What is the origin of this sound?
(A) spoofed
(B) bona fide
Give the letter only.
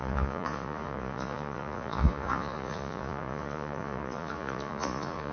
A